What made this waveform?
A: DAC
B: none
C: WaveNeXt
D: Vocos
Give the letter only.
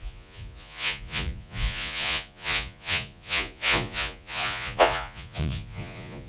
D